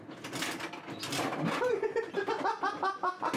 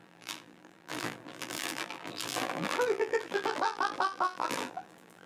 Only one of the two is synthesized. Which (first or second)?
second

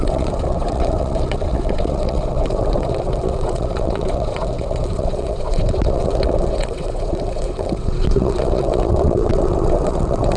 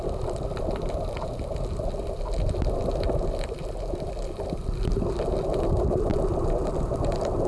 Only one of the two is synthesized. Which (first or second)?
first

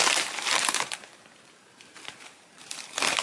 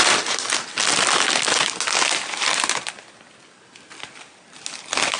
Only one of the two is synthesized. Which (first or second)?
first